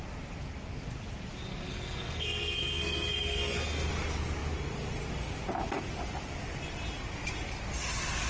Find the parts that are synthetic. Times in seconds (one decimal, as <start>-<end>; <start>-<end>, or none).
1.5-3.9